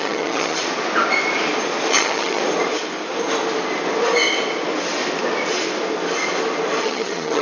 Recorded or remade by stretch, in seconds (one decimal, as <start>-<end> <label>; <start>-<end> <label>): 0.0-0.6 remade; 0.6-1.9 recorded; 1.9-2.4 remade; 2.4-6.8 recorded; 6.8-7.4 remade